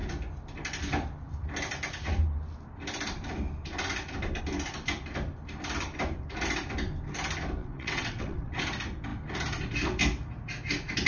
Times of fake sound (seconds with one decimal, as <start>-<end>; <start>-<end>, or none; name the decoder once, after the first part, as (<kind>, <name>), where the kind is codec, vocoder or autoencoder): 7.6-8.6 (vocoder, WaveNeXt)